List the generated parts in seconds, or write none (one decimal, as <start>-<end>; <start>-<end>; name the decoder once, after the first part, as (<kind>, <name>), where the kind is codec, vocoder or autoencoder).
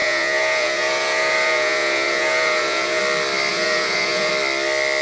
0.0-3.0 (vocoder, Vocos); 3.5-4.3